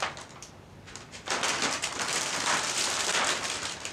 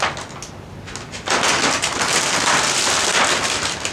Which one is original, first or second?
second